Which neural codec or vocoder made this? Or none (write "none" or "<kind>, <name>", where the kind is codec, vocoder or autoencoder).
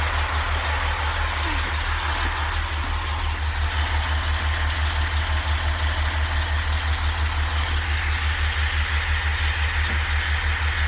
none